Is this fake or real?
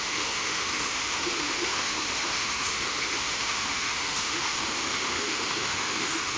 fake